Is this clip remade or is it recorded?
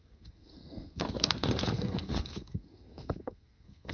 remade